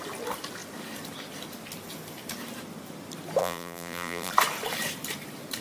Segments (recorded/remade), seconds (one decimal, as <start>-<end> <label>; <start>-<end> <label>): 0.0-3.4 recorded; 3.4-4.3 remade; 4.3-5.6 recorded